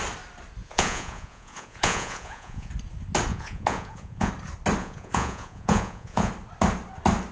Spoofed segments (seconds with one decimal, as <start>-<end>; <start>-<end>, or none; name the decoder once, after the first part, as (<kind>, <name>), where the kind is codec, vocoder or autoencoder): 0.6-2.7 (vocoder, Vocos); 3.3-4.3; 4.8-6.3

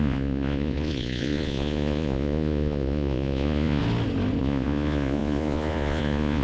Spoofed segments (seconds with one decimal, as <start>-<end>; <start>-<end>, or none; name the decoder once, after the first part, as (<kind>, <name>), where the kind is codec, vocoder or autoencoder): 0.0-3.8 (vocoder, Vocos); 4.4-6.4

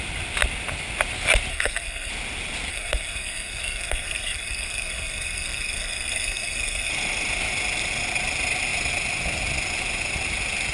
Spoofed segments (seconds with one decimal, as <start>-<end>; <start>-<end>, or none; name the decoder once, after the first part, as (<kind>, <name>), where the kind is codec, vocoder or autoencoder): 1.5-2.1 (codec, SNAC); 2.7-6.9

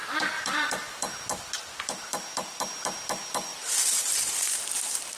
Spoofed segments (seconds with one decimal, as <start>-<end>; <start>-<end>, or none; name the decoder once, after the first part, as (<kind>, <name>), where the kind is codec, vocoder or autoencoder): 1.3-2.0 (vocoder, BigVGAN v2); 3.5-4.1

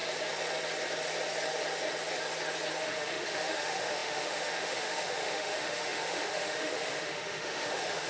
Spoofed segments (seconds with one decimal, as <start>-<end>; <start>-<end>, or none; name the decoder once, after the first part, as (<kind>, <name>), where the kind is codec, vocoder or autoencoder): 2.8-8.1 (autoencoder, DAC-VAE)

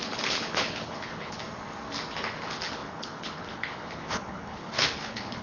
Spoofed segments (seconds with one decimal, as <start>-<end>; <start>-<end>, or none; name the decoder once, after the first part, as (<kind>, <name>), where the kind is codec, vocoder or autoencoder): 0.0-1.4 (codec, HILCodec); 2.3-5.4

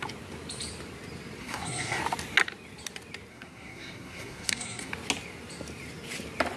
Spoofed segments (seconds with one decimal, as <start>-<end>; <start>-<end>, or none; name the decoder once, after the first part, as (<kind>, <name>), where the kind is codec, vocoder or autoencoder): 1.4-2.0 (codec, SNAC); 3.3-4.9